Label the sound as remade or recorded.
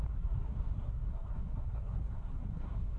remade